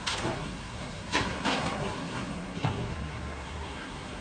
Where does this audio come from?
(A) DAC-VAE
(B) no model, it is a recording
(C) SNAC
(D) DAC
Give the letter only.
C